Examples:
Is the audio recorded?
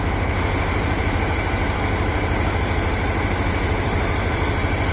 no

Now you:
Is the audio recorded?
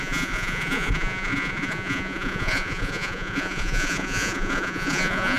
no